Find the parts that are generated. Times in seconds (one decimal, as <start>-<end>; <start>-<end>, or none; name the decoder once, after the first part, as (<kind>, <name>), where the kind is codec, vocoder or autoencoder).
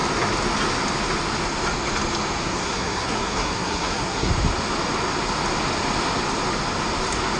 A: 2.4-4.3 (codec, SNAC)